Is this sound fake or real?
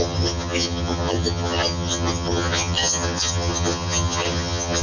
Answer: fake